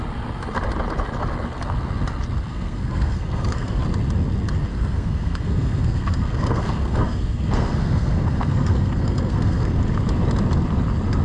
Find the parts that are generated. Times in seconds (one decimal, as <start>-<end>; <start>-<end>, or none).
2.5-3.8; 4.7-9.8